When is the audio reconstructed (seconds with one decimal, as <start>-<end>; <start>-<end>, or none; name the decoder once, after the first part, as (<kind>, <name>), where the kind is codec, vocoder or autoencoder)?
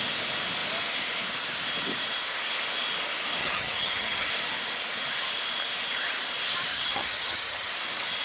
3.4-4.3 (vocoder, HiFi-GAN); 6.7-7.7